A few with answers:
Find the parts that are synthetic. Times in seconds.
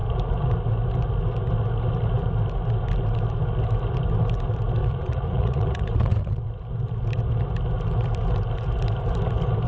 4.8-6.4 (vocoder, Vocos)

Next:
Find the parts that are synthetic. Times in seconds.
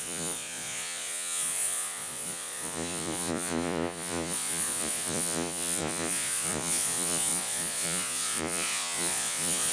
0.0-9.7 (vocoder, Vocos)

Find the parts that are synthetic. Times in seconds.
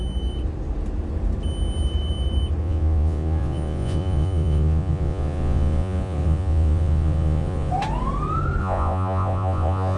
2.6-7.7 (vocoder, Vocos); 8.6-10.0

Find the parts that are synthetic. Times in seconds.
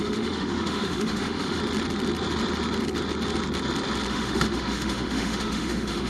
0.0-1.6 (autoencoder, DAC-VAE); 4.1-6.1